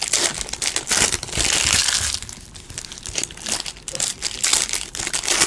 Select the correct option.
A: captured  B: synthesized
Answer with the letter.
A